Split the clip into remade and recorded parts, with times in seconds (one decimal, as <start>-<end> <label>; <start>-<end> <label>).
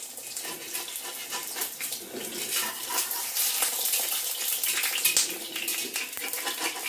0.0-1.2 recorded; 1.2-4.2 remade; 4.2-6.9 recorded